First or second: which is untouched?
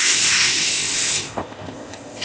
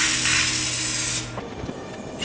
second